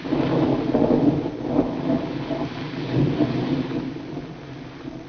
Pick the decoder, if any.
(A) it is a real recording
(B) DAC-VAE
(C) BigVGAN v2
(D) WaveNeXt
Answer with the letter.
A